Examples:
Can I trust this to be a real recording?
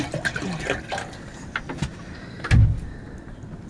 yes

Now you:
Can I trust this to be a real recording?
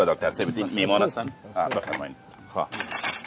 yes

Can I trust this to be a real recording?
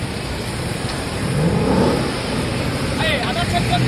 no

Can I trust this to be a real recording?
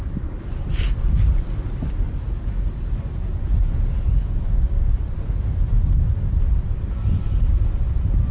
yes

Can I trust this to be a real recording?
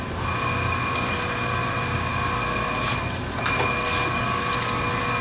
yes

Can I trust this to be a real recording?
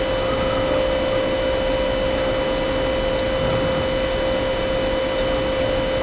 yes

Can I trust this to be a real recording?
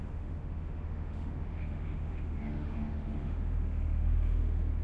no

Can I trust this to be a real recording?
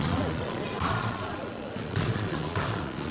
no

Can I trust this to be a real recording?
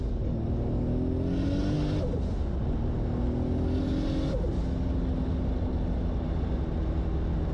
yes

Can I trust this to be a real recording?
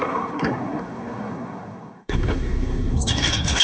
no